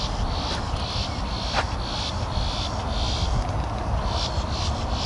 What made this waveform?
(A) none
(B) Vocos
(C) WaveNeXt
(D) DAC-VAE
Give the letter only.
A